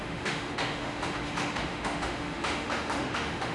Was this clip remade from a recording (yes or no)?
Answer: yes